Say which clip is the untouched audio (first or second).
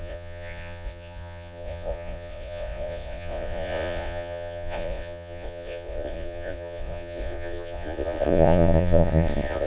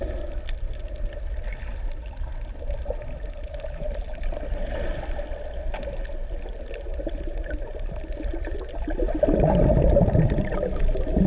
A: second